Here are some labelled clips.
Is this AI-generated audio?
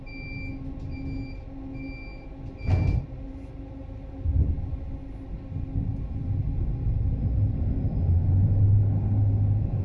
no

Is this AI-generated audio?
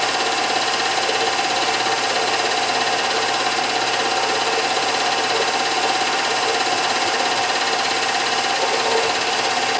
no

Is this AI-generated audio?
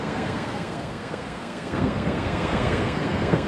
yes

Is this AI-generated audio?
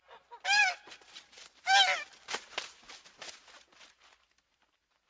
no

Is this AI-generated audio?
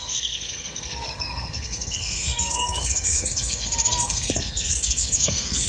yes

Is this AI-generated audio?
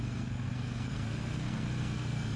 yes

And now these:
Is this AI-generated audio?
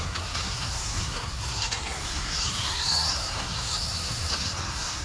yes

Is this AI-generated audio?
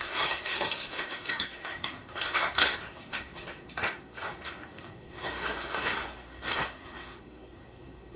yes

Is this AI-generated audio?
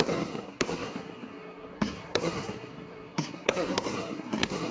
yes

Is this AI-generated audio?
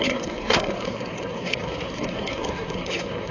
yes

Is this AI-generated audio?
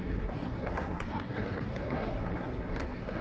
yes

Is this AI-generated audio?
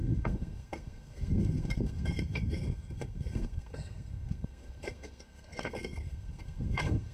yes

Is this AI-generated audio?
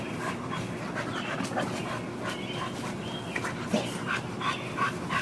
no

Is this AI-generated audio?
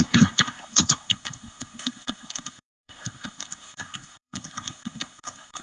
yes